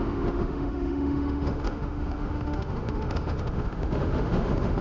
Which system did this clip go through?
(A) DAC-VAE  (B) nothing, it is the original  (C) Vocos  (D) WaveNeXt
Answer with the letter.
A